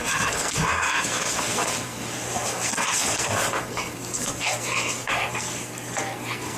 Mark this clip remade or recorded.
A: remade